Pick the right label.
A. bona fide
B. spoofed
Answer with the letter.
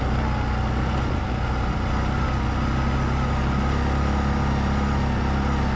A